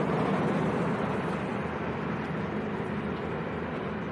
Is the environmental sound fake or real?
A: real